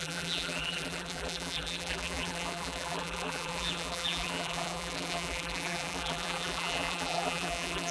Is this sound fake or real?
fake